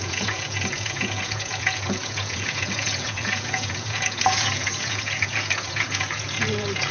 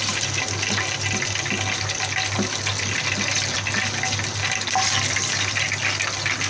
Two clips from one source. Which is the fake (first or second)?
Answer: first